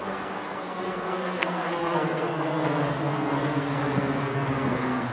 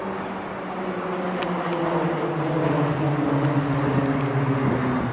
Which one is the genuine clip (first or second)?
second